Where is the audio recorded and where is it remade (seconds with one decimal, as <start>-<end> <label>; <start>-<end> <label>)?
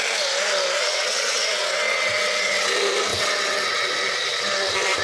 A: 0.0-0.9 recorded; 0.9-2.7 remade; 2.7-3.1 recorded; 3.1-3.9 remade; 3.9-5.0 recorded